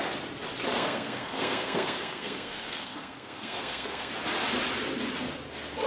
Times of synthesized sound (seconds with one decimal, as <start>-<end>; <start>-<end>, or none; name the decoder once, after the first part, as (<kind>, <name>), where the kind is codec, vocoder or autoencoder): 0.7-4.1 (codec, SNAC)